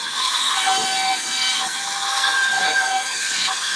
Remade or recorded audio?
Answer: remade